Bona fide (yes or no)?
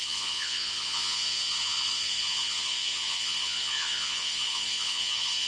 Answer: no